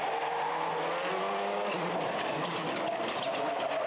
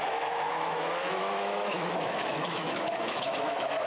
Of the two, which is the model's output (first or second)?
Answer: second